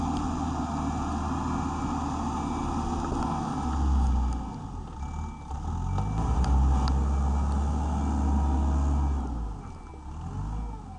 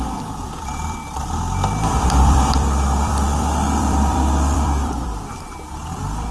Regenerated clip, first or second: second